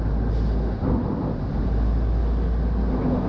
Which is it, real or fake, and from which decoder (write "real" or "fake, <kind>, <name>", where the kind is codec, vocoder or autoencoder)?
real